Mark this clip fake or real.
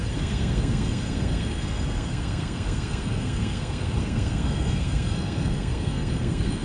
fake